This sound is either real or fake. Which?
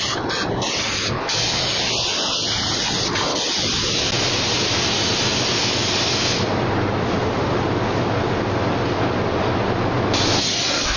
real